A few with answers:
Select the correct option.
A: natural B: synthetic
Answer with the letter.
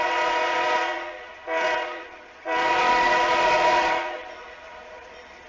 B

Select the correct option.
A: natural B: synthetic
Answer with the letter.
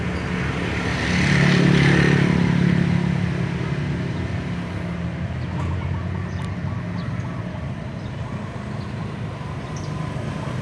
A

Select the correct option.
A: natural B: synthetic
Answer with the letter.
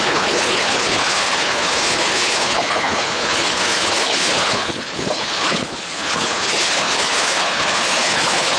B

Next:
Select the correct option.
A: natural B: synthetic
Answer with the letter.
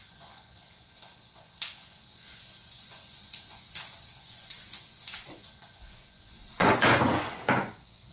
B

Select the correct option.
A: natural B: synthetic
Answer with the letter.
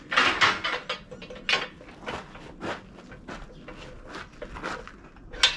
A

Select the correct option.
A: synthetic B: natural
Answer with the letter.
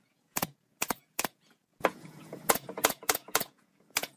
A